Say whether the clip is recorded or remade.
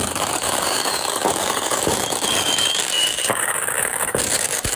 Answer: remade